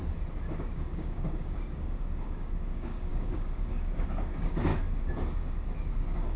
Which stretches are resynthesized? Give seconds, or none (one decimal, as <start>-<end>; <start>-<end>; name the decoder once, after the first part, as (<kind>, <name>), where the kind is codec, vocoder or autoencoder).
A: 0.6-4.7 (codec, DAC); 5.9-6.4

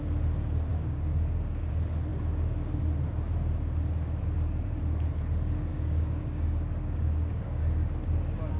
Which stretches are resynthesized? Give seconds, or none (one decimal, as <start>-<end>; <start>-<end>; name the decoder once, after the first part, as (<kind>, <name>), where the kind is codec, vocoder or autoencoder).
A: 0.7-1.7 (codec, DAC); 5.7-7.6

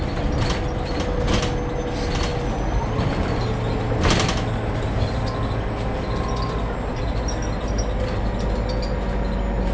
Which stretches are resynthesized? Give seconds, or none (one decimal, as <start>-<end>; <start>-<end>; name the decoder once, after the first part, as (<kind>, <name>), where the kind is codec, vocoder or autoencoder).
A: none